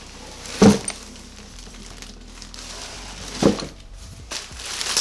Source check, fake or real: real